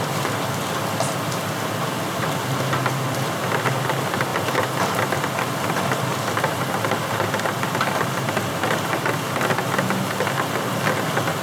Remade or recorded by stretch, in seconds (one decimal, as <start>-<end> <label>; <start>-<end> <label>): 0.0-11.4 recorded